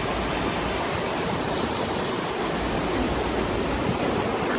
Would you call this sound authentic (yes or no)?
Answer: yes